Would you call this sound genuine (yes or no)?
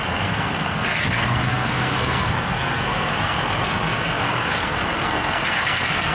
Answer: no